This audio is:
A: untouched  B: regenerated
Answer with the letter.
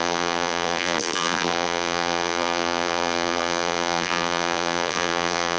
B